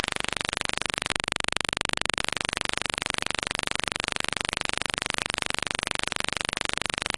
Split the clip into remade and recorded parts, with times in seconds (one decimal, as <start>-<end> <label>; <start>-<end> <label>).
0.0-1.1 recorded; 1.1-2.2 remade; 2.2-7.2 recorded